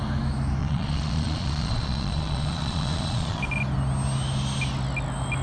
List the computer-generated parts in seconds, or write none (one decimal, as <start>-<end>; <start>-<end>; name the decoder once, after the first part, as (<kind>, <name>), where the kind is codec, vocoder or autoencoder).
0.6-3.4 (vocoder, Vocos)